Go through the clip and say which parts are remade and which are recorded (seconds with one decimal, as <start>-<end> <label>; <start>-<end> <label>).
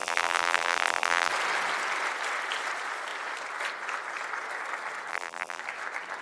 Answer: 0.0-1.3 remade; 1.3-5.1 recorded; 5.1-5.6 remade; 5.6-6.2 recorded